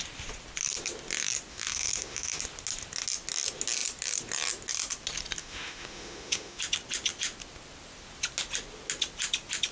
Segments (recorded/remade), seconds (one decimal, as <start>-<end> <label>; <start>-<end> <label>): 0.0-1.5 recorded; 1.5-2.4 remade; 2.4-5.4 recorded; 5.4-6.6 remade; 6.6-9.7 recorded

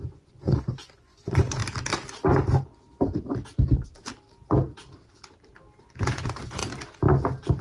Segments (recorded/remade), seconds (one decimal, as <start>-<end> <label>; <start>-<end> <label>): 0.0-1.6 remade; 1.6-5.8 recorded; 5.8-6.6 remade; 6.6-7.6 recorded

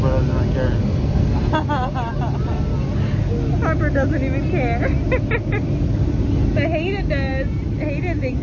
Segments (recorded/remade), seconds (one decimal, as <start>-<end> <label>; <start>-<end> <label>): 0.0-0.8 recorded; 0.8-1.5 remade; 1.5-8.4 recorded

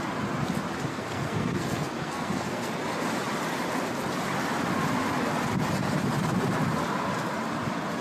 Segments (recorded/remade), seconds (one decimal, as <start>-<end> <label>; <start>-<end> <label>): 0.0-0.9 recorded; 0.9-2.7 remade; 2.7-8.0 recorded